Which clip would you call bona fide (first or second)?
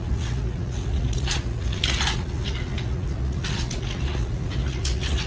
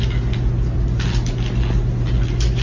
second